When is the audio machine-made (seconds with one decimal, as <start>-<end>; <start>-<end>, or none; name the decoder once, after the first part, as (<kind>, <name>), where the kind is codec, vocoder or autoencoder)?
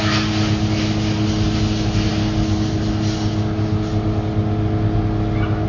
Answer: none